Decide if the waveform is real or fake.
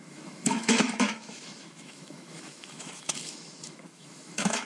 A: fake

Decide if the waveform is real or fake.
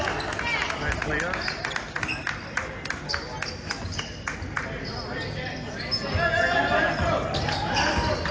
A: real